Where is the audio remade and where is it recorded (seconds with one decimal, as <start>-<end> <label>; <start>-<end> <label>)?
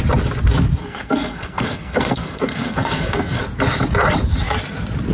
0.0-0.8 recorded; 0.8-3.4 remade; 3.4-5.1 recorded